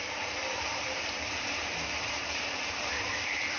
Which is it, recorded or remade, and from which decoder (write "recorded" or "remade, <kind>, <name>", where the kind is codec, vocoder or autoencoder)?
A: remade, vocoder, BigVGAN v2